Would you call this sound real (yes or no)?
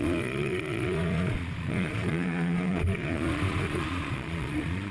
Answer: no